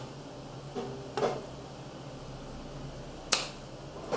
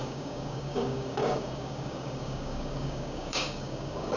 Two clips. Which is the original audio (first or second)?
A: first